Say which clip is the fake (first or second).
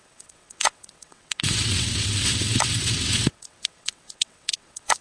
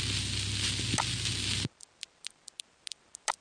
first